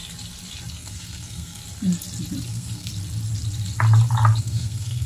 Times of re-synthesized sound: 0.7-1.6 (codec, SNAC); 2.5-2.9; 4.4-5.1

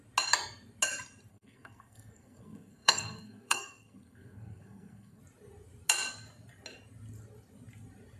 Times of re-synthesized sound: 1.3-5.2 (codec, SNAC)

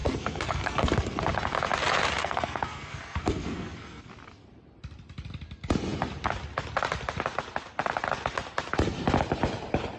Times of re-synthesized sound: 0.0-1.2 (codec, SNAC); 2.2-4.1